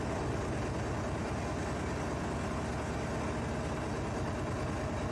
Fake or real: real